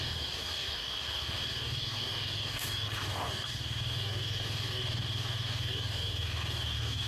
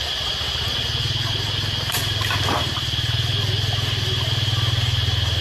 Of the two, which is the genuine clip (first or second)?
second